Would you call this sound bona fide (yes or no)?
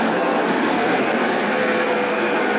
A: no